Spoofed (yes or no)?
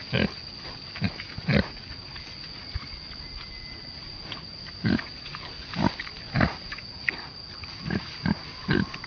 no